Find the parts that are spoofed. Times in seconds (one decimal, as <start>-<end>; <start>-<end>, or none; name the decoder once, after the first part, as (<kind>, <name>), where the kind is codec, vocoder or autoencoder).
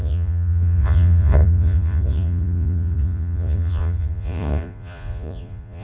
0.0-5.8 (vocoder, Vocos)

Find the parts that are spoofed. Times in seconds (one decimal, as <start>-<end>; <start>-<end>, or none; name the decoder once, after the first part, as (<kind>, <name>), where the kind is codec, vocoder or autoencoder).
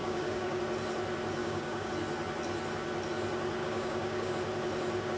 0.0-0.6 (codec, DAC); 1.4-1.9; 3.6-4.3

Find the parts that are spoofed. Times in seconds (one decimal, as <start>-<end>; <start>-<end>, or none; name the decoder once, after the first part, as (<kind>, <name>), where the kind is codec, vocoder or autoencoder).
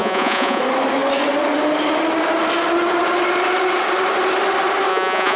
0.0-0.6 (vocoder, Vocos); 4.9-5.4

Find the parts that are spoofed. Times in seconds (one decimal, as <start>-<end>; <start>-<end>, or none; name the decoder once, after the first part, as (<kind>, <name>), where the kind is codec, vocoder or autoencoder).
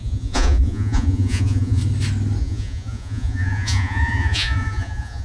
0.0-1.8 (vocoder, Vocos); 2.4-5.2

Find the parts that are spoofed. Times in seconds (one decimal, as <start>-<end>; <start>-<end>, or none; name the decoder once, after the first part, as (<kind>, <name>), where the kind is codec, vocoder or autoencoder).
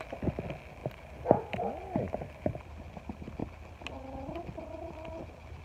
none